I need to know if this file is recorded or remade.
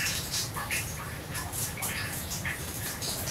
remade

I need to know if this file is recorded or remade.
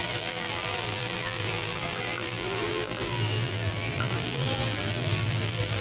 remade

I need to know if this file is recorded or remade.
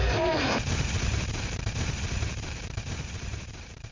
remade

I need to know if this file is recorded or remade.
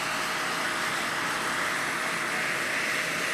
recorded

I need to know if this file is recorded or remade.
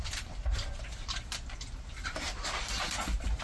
remade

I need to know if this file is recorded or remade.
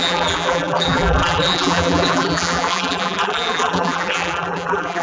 remade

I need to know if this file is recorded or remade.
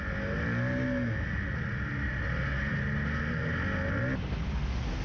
recorded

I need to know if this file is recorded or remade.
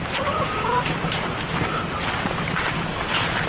remade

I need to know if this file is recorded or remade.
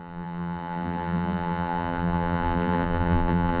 remade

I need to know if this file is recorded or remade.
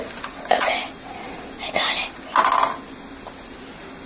recorded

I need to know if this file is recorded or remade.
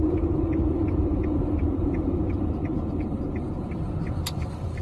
remade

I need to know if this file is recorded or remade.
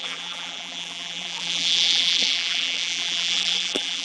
remade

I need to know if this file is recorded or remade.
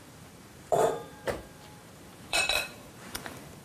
remade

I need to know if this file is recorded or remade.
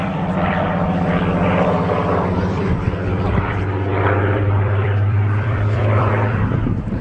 remade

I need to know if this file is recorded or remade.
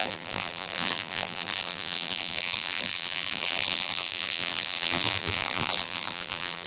remade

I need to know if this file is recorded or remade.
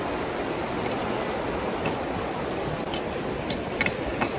recorded